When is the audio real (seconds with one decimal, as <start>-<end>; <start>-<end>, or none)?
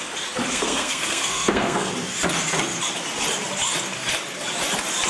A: 0.0-0.5; 1.9-5.1